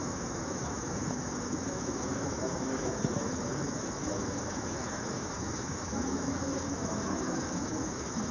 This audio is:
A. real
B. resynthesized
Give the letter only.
B